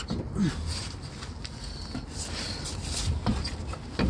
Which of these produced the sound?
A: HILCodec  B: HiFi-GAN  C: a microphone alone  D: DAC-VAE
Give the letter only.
C